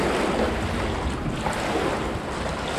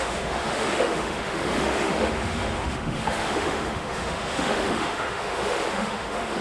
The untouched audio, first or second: first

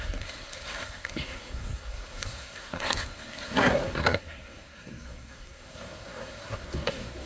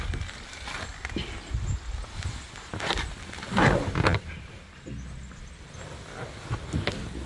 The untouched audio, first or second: second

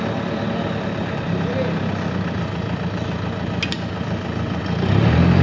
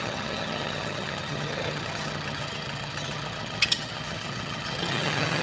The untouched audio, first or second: first